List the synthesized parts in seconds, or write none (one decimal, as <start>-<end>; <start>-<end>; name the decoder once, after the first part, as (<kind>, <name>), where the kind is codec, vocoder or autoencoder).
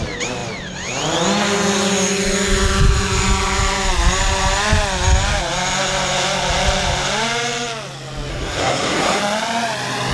8.3-9.2 (codec, SNAC)